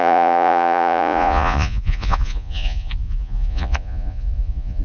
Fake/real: fake